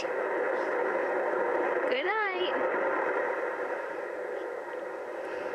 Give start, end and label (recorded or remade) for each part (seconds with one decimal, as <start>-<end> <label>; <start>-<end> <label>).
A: 0.0-1.5 recorded; 1.5-4.0 remade; 4.0-5.5 recorded

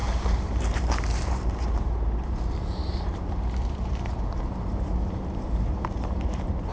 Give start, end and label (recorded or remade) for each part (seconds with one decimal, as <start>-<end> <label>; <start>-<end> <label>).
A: 0.0-6.7 remade